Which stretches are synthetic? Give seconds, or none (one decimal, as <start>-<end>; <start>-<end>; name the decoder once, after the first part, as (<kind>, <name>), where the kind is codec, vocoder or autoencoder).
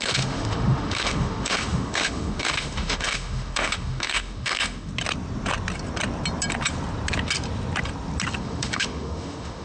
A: 0.0-4.9 (autoencoder, DAC-VAE); 8.4-9.6